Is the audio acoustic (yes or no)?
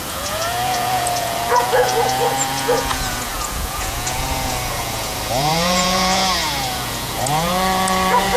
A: no